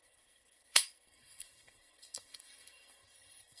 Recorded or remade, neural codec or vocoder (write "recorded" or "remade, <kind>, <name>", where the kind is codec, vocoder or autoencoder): remade, codec, SNAC